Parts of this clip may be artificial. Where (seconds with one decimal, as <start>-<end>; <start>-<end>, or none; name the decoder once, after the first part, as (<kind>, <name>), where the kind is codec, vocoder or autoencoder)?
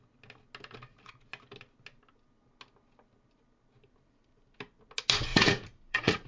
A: 5.3-6.3 (vocoder, Vocos)